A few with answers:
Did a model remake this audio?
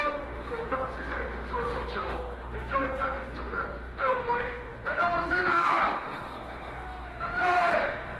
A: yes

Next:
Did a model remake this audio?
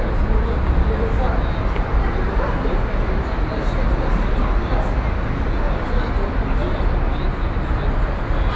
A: no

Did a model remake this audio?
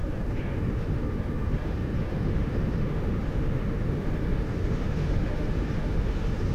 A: yes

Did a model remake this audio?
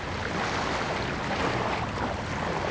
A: no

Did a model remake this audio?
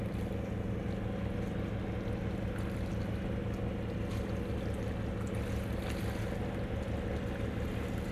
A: no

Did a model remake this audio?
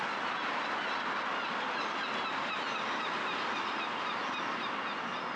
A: no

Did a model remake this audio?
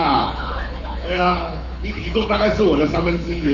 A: yes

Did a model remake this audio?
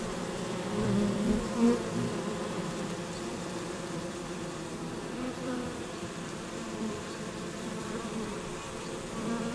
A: yes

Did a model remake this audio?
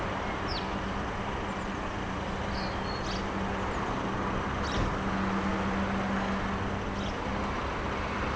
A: no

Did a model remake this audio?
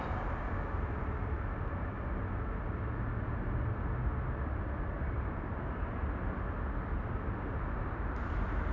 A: no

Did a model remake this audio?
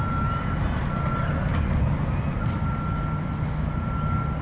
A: no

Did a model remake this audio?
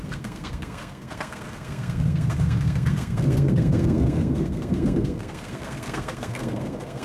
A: yes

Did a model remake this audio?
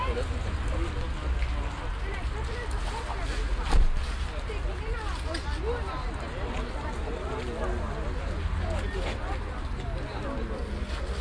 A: no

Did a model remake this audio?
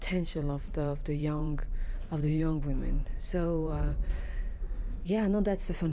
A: yes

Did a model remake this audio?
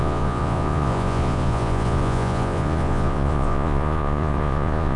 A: yes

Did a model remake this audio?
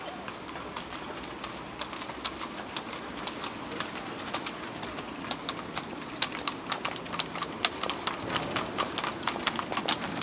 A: no